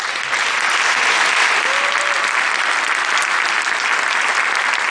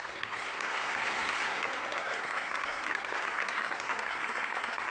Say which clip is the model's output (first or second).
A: second